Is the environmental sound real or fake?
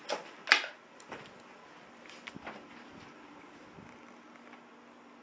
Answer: real